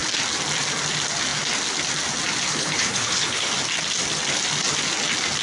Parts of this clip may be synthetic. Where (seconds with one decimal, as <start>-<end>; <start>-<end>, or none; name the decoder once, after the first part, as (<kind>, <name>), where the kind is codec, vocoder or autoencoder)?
2.5-3.5 (codec, HILCodec)